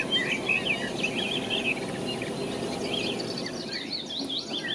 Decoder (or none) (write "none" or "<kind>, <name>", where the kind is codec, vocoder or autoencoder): none